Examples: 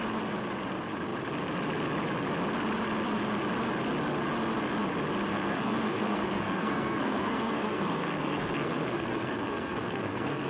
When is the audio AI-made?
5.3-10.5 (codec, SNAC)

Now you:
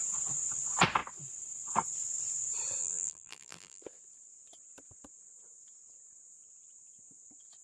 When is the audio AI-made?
2.8-3.8 (vocoder, BigVGAN v2)

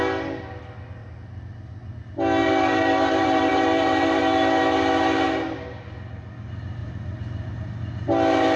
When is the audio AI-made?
2.4-4.2 (vocoder, BigVGAN v2); 6.8-7.7

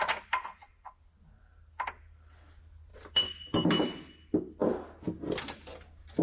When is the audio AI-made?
none

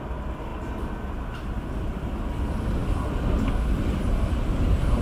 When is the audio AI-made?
none

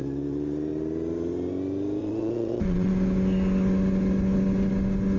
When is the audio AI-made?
2.0-2.9 (vocoder, WaveNeXt)